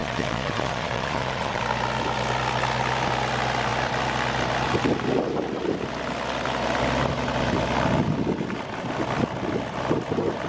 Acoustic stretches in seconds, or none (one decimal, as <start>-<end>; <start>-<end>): 1.6-10.5